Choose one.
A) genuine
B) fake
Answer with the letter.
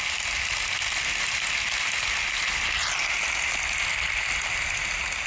A